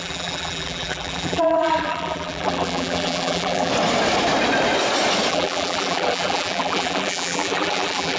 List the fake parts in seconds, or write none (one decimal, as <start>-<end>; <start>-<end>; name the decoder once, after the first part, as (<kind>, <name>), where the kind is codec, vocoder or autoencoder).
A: 0.0-3.7 (vocoder, BigVGAN v2); 5.3-8.2